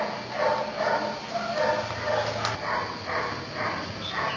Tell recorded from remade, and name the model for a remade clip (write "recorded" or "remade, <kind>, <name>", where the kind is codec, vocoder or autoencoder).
recorded